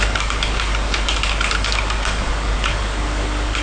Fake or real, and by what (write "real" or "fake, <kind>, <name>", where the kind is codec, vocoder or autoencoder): fake, codec, DAC